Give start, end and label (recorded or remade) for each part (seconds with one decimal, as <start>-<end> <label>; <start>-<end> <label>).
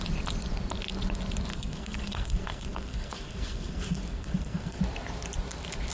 0.0-1.5 recorded; 1.5-4.8 remade; 4.8-5.9 recorded